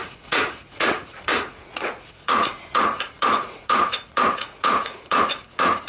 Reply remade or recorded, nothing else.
remade